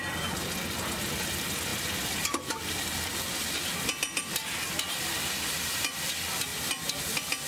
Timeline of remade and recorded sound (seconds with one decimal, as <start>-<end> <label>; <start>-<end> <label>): 0.0-7.5 recorded